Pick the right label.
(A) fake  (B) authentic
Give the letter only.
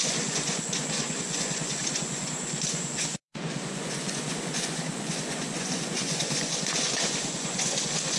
A